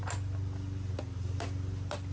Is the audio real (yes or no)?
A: yes